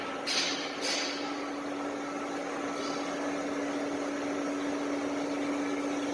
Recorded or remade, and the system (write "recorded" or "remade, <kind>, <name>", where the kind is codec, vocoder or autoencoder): recorded